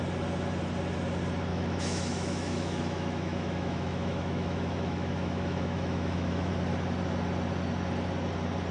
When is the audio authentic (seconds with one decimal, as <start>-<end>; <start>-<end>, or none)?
0.0-1.5; 6.5-8.7